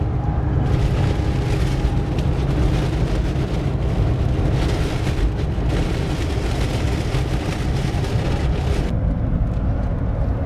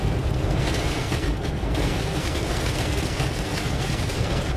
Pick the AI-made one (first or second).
second